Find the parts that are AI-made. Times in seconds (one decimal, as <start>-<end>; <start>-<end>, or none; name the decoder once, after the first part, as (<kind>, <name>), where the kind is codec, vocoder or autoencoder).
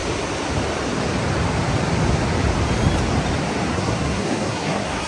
3.7-5.1 (codec, SNAC)